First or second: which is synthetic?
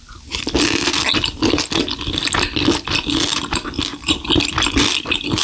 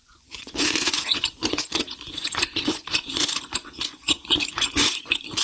second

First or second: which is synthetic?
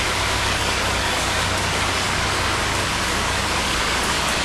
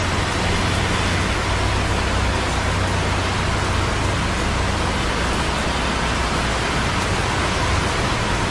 first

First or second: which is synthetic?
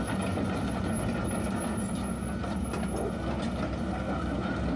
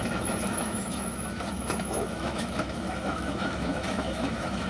second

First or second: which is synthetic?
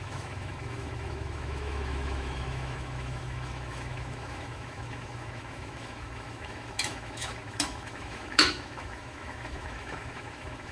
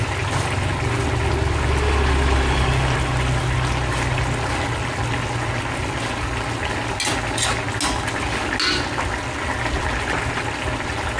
first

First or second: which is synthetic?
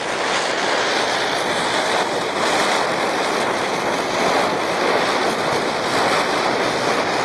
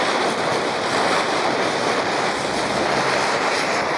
second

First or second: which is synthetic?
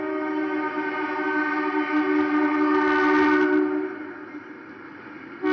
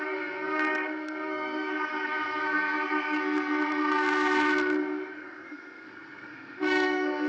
second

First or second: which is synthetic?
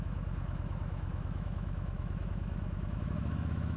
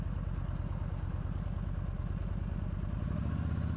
first